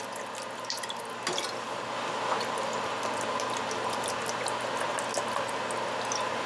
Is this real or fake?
real